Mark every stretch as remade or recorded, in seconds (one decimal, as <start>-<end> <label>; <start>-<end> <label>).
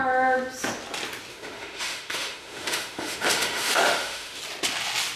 0.0-1.3 recorded; 1.3-4.4 remade; 4.4-5.2 recorded